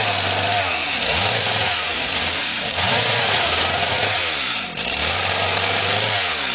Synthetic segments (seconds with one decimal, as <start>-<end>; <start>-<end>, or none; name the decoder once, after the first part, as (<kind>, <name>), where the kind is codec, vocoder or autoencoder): 0.8-4.2 (vocoder, Vocos)